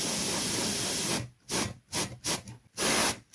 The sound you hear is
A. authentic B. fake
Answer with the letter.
A